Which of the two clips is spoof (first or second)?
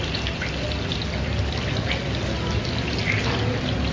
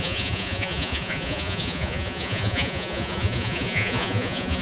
second